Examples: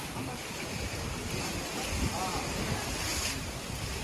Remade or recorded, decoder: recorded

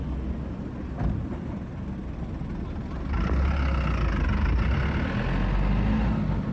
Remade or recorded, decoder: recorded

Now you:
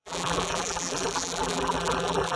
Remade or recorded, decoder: remade, vocoder, BigVGAN v2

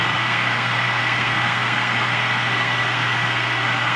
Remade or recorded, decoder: remade, codec, SNAC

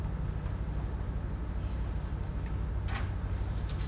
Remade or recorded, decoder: recorded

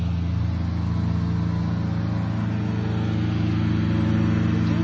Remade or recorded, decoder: recorded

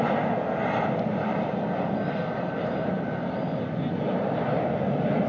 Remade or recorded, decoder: recorded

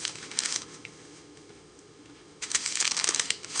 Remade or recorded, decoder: remade, autoencoder, DAC-VAE